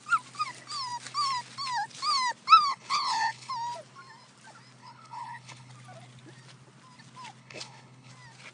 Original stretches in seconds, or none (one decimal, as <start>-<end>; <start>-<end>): 0.0-2.7; 3.5-4.8; 5.7-7.4; 8.1-8.5